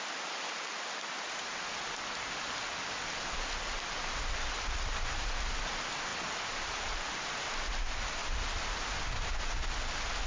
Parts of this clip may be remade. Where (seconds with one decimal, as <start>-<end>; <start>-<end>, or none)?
none